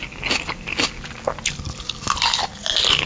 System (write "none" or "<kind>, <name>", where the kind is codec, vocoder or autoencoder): none